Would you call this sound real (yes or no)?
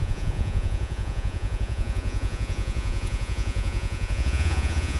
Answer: no